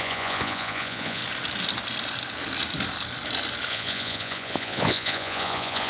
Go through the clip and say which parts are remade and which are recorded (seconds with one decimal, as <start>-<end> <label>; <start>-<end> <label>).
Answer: 0.0-1.2 remade; 1.2-3.7 recorded; 3.7-5.9 remade